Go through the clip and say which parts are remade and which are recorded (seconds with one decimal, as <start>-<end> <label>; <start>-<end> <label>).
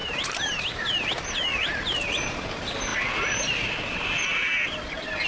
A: 0.0-0.9 remade; 0.9-5.3 recorded